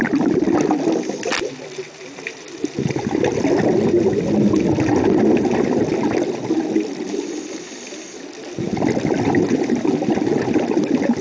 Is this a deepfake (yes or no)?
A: no